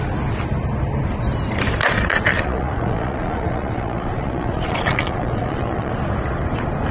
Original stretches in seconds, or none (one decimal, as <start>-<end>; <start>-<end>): 0.0-1.8; 5.9-6.9